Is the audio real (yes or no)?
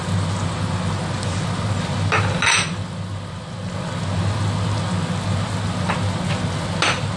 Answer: yes